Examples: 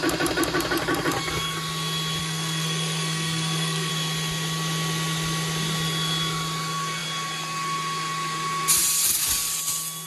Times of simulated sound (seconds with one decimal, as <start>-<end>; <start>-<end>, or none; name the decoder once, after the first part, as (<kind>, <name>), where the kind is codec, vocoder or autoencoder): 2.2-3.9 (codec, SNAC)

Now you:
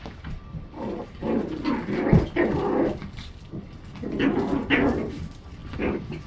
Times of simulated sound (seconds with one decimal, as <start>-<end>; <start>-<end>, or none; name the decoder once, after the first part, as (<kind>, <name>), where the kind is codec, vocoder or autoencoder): 0.0-1.2 (vocoder, BigVGAN v2); 5.0-5.6

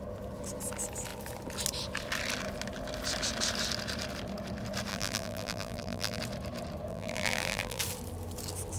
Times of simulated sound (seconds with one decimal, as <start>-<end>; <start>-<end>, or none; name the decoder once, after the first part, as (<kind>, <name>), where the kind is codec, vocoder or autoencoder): 4.9-6.2 (vocoder, BigVGAN v2); 6.9-7.8

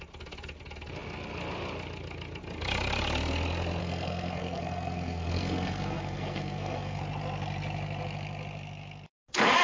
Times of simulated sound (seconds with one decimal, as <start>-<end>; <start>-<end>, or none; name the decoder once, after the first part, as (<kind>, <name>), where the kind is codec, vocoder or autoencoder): 3.8-7.0 (codec, SNAC)

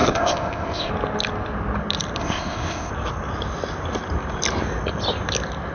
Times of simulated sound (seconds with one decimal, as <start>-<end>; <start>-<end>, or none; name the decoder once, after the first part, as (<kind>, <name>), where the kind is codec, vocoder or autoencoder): 0.0-0.9 (codec, ZipCodec); 2.2-2.9

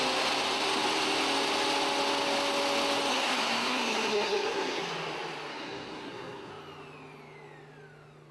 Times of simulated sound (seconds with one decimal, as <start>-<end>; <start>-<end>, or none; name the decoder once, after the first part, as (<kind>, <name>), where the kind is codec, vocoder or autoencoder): 3.1-4.8 (codec, SNAC); 5.5-6.5